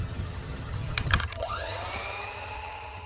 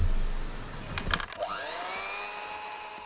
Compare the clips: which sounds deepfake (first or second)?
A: first